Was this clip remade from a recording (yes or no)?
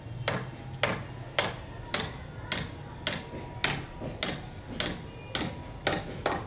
no